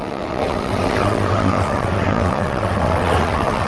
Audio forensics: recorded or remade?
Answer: remade